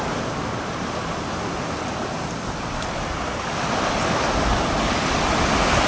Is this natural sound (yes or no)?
yes